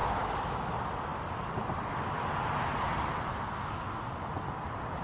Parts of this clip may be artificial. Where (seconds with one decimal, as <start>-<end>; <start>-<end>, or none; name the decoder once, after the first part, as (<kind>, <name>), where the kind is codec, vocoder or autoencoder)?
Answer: 0.0-0.7 (autoencoder, DAC-VAE)

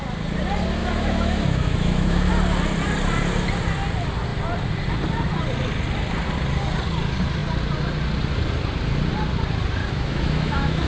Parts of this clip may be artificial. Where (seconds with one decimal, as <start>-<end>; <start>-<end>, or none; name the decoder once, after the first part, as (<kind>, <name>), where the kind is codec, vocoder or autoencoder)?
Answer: 0.8-2.3 (autoencoder, DAC-VAE); 9.8-10.9